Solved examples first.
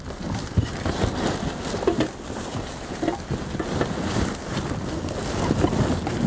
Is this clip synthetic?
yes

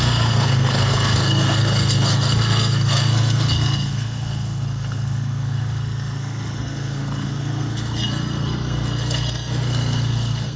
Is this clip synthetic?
yes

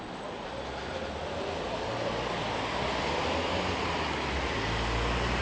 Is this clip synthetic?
no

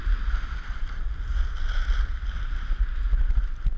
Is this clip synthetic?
no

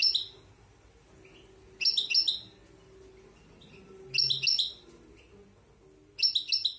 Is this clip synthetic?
no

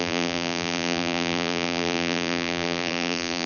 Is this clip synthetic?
yes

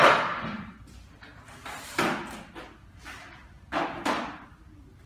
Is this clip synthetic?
no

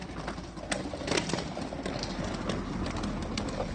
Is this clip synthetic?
no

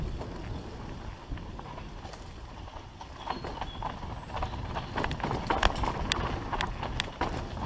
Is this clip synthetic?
no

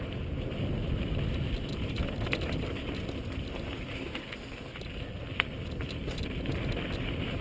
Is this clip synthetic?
no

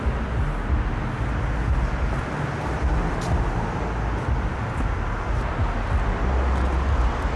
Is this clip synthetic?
no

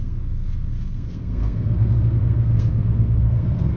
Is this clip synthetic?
yes